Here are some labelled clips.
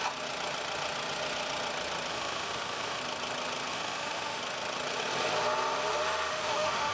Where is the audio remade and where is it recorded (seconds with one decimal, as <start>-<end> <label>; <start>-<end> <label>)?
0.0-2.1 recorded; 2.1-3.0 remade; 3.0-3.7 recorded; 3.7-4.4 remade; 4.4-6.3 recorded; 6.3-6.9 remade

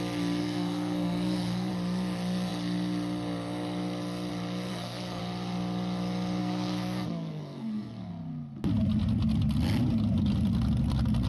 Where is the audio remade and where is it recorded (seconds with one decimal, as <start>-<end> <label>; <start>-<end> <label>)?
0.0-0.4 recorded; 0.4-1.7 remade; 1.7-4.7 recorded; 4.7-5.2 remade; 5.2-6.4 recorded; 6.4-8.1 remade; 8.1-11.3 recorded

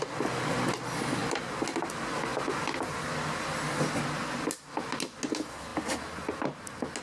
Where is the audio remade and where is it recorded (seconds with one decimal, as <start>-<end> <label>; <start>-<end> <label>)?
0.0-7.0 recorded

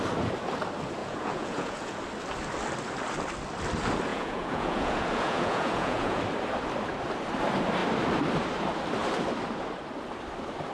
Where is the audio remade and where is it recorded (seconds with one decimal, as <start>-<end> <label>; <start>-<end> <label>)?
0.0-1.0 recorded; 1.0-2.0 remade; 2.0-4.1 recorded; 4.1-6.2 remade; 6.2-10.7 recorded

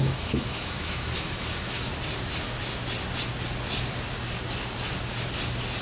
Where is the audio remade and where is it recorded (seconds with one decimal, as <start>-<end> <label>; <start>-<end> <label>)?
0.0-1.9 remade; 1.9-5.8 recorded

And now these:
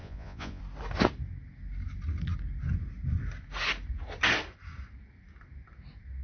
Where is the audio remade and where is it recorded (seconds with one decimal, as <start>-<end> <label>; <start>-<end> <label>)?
0.0-0.6 remade; 0.6-6.2 recorded

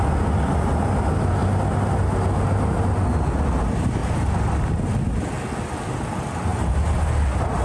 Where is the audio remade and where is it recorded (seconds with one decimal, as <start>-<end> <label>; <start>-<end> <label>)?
0.0-4.0 recorded; 4.0-4.7 remade; 4.7-6.5 recorded; 6.5-7.6 remade